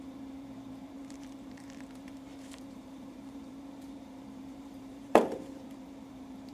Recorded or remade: remade